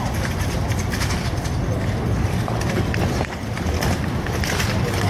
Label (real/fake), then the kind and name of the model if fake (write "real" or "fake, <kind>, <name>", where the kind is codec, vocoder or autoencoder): fake, vocoder, BigVGAN v2